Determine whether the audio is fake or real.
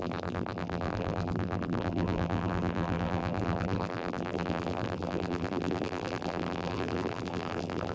fake